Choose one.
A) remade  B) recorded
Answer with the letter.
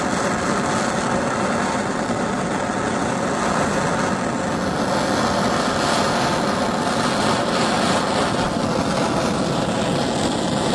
B